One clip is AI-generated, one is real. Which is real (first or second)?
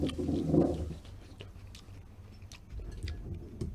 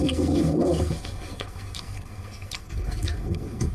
first